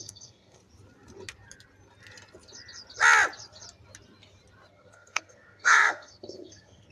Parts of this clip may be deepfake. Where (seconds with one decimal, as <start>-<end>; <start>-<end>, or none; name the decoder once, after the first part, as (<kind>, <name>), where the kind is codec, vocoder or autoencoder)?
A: 0.0-0.6 (codec, SNAC); 4.7-6.9